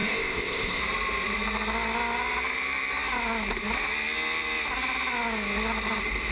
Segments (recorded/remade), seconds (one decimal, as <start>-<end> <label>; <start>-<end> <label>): 0.0-0.8 remade; 0.8-6.3 recorded